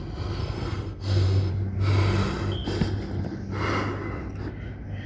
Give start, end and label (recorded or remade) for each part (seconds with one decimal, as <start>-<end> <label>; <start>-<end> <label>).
0.0-0.4 recorded; 0.4-1.5 remade; 1.5-5.1 recorded